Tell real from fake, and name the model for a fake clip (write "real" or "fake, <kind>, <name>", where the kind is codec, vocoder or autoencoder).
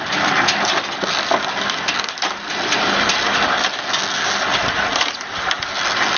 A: real